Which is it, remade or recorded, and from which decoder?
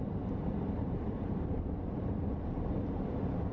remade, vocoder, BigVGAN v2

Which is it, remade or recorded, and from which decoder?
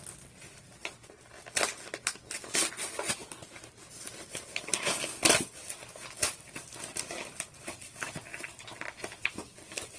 recorded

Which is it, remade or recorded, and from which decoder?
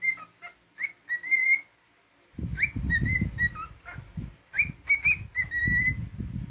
recorded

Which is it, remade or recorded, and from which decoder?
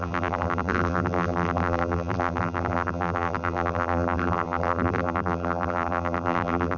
remade, vocoder, BigVGAN v2